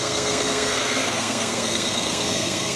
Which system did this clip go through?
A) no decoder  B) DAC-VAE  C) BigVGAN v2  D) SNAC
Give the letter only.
D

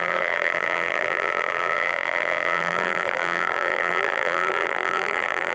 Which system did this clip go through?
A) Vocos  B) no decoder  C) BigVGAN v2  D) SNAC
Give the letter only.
C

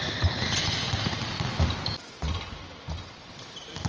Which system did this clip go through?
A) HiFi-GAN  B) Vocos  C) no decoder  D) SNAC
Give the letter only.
C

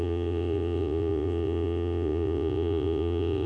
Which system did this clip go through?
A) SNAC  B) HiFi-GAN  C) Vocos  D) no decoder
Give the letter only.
C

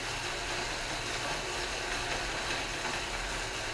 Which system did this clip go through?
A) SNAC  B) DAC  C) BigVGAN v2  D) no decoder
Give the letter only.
D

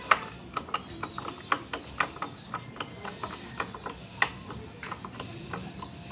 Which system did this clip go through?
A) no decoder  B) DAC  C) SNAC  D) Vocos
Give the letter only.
A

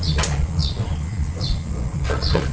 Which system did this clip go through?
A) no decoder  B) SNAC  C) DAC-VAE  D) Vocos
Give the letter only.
D